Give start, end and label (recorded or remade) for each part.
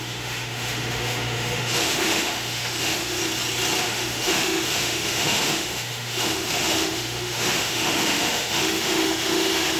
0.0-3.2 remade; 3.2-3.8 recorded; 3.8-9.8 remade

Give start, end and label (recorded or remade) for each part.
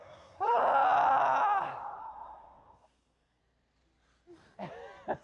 0.0-0.6 remade; 0.6-2.0 recorded; 2.0-3.4 remade; 3.4-5.2 recorded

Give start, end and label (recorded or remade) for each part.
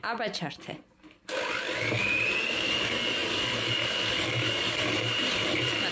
0.0-0.8 remade; 0.8-2.0 recorded; 2.0-5.9 remade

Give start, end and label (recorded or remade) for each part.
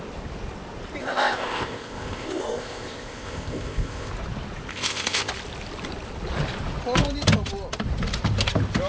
0.0-1.0 recorded; 1.0-4.1 remade; 4.1-4.7 recorded; 4.7-5.3 remade; 5.3-8.9 recorded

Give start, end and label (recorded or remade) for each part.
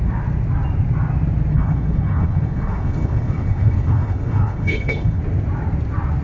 0.0-1.5 recorded; 1.5-5.2 remade; 5.2-6.2 recorded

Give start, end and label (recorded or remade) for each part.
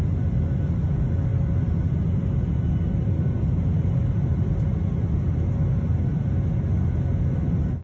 0.0-7.8 recorded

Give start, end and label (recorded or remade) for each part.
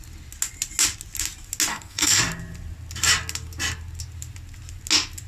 0.0-1.7 recorded; 1.7-2.2 remade; 2.2-5.3 recorded